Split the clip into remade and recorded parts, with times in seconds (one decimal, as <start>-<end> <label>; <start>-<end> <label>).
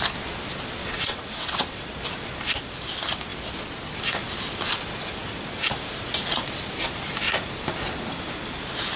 0.0-0.8 recorded; 0.8-1.9 remade; 1.9-9.0 recorded